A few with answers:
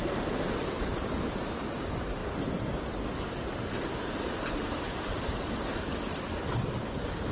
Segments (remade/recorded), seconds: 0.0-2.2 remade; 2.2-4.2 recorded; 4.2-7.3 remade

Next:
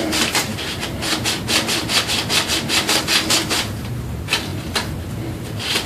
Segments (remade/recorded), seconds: 0.0-4.5 recorded; 4.5-5.2 remade; 5.2-5.9 recorded

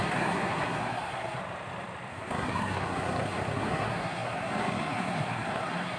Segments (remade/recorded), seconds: 0.0-1.4 remade; 1.4-2.1 recorded; 2.1-6.0 remade

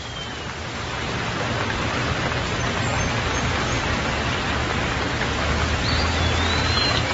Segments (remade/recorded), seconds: 0.0-7.1 recorded

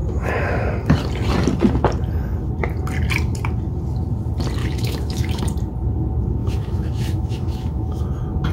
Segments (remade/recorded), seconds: 0.0-4.6 recorded; 4.6-5.4 remade; 5.4-6.4 recorded; 6.4-8.0 remade; 8.0-8.5 recorded

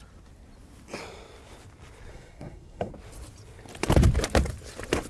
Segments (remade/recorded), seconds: 0.0-2.1 recorded; 2.1-2.9 remade; 2.9-5.1 recorded

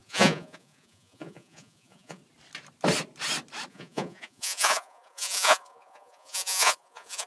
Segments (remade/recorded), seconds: 0.0-2.2 remade; 2.2-3.7 recorded; 3.7-7.3 remade

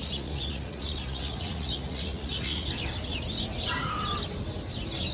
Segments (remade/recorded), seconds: 0.0-2.7 remade; 2.7-5.1 recorded